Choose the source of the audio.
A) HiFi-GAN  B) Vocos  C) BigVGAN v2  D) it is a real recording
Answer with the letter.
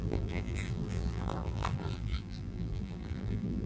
C